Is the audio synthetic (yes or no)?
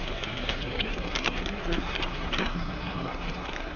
yes